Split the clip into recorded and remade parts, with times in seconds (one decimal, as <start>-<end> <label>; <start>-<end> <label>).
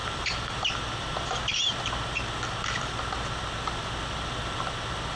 0.0-1.4 remade; 1.4-5.2 recorded